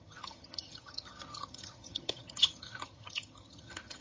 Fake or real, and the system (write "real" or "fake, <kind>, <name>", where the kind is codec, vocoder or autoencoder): fake, vocoder, HiFi-GAN